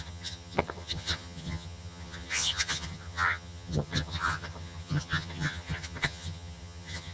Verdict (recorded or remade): remade